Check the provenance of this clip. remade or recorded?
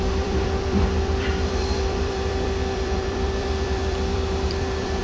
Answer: remade